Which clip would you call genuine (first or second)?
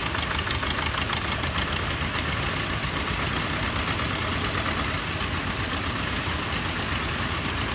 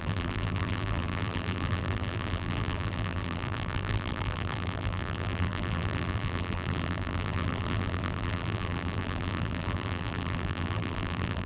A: first